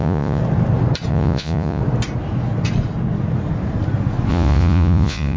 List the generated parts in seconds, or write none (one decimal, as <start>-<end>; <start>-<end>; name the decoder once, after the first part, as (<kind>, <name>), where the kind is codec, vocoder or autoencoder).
0.0-0.4 (vocoder, Vocos); 1.1-1.8; 4.3-5.4

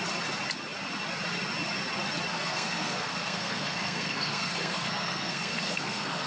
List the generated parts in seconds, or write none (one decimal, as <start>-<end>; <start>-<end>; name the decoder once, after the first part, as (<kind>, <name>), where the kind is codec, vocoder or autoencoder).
2.3-6.3 (codec, SNAC)

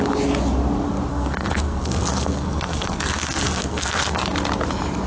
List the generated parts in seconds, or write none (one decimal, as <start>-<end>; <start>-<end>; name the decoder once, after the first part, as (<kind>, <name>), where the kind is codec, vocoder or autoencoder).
1.1-4.2 (codec, SNAC)

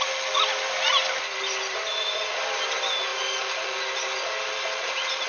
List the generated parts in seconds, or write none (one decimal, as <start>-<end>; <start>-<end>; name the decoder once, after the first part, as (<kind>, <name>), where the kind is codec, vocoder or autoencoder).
none

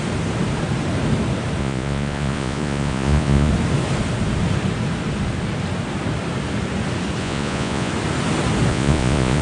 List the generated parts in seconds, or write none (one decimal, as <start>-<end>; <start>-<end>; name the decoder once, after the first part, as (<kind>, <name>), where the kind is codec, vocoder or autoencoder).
1.6-3.5 (vocoder, Vocos); 7.2-7.9; 8.7-9.4